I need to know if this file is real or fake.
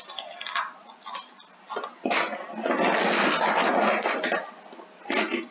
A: real